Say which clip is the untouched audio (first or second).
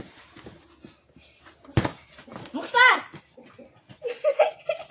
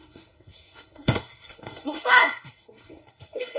first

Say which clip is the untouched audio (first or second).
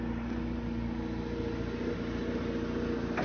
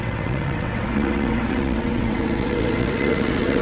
first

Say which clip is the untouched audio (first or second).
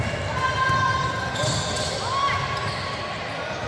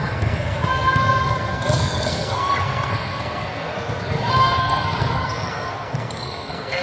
first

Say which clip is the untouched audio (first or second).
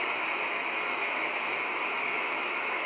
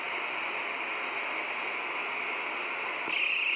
second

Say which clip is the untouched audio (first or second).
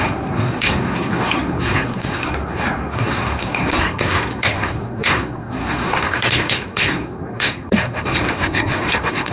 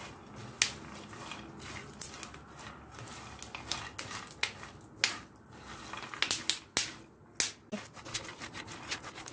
second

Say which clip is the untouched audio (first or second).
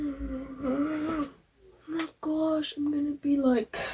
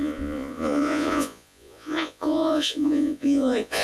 first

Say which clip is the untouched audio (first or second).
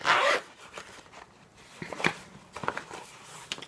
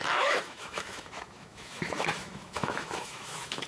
first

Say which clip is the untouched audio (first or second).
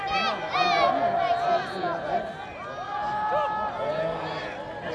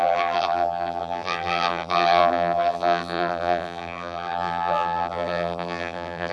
first